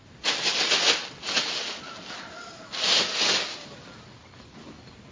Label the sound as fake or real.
real